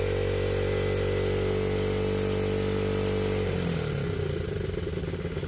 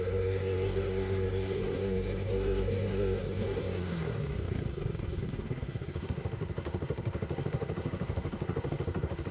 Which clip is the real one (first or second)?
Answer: first